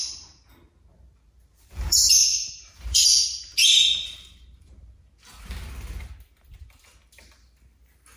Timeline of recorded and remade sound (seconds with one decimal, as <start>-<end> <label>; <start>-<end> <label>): 0.0-0.9 recorded; 0.9-4.9 remade; 4.9-8.2 recorded